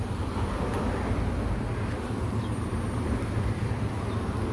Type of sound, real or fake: real